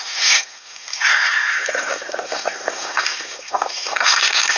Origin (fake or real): fake